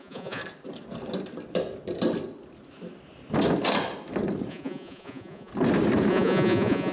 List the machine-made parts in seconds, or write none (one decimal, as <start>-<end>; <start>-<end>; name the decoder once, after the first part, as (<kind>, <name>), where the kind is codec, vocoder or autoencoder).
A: 0.0-0.4 (vocoder, Vocos); 4.5-5.5; 6.1-6.9